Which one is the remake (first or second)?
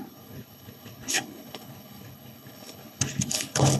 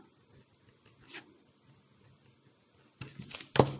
first